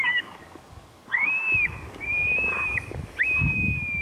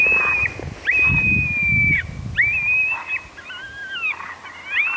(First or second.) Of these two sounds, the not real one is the first